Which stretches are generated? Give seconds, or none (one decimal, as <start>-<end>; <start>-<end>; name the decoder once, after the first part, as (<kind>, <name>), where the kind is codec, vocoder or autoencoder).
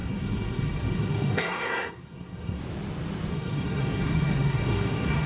0.0-2.6 (codec, SNAC); 3.3-5.3